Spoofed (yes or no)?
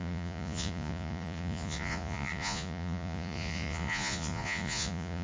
yes